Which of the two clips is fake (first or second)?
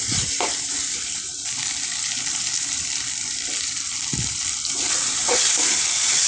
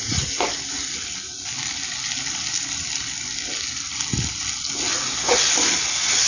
first